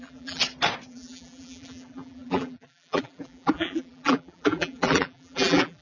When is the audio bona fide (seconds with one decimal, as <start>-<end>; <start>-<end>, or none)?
0.4-0.9